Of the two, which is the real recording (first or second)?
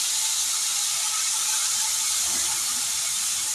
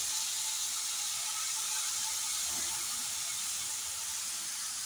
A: second